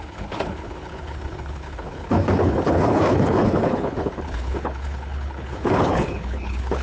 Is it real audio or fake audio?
fake